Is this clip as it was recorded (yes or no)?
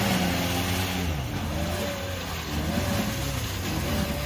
yes